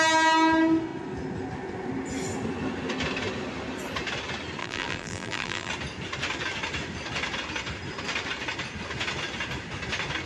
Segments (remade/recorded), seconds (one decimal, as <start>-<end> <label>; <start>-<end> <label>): 0.0-4.6 recorded; 4.6-5.7 remade; 5.7-10.3 recorded